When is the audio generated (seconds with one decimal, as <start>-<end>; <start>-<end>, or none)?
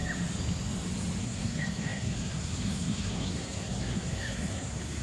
1.2-5.0